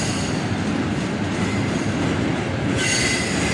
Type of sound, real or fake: real